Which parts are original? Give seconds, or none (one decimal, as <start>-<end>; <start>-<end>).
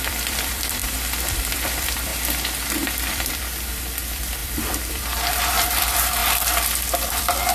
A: 0.8-1.5; 2.1-3.1; 6.2-7.1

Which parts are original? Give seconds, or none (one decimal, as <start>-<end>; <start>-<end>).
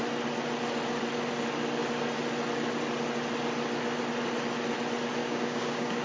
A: 0.0-5.2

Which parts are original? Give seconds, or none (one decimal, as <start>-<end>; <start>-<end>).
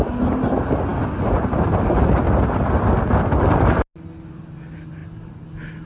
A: 0.0-5.9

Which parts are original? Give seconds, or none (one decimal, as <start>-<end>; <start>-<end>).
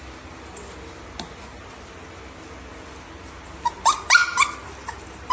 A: 0.0-5.3